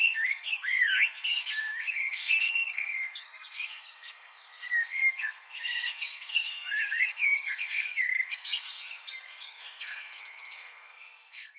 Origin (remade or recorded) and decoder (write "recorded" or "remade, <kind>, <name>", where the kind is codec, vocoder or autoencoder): remade, codec, SNAC